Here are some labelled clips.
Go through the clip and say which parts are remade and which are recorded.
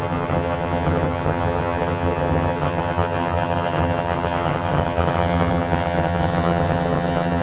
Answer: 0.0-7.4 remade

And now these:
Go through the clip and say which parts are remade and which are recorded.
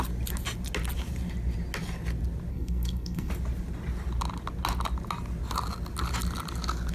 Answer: 0.0-2.5 recorded; 2.5-3.3 remade; 3.3-6.9 recorded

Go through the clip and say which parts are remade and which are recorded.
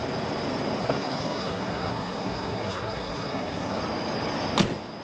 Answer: 0.0-0.8 recorded; 0.8-3.8 remade; 3.8-5.0 recorded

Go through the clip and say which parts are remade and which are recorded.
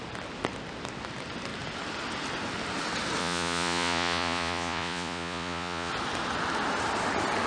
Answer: 0.0-3.2 recorded; 3.2-5.9 remade; 5.9-7.5 recorded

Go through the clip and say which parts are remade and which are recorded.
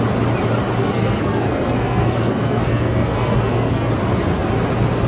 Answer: 0.0-0.8 recorded; 0.8-3.9 remade; 3.9-5.1 recorded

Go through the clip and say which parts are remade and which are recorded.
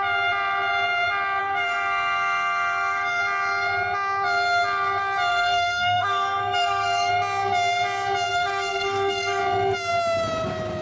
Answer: 0.0-1.4 recorded; 1.4-3.2 remade; 3.2-5.3 recorded; 5.3-7.1 remade; 7.1-8.3 recorded; 8.3-9.4 remade; 9.4-10.8 recorded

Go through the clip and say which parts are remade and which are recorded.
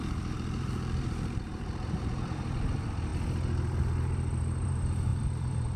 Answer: 0.0-3.1 remade; 3.1-3.8 recorded; 3.8-5.8 remade